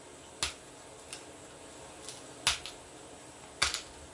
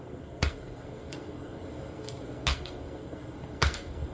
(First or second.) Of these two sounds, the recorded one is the first